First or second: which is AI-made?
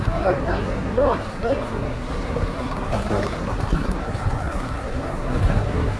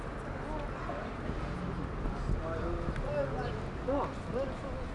first